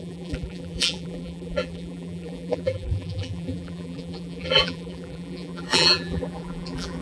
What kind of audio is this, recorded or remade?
remade